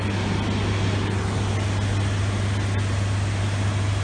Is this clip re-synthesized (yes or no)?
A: no